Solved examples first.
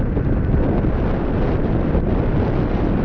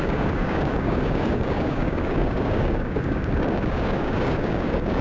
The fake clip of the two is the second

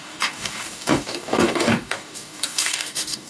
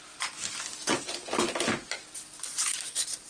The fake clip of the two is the first